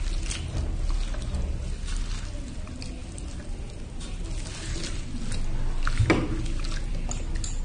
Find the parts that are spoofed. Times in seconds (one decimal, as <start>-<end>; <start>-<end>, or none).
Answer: none